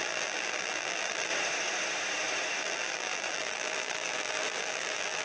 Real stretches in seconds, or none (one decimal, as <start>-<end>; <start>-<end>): 1.3-2.6